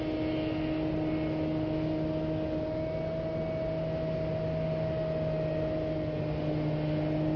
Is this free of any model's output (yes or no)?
yes